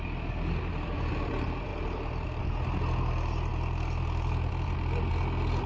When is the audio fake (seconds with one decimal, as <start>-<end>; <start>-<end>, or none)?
1.7-2.4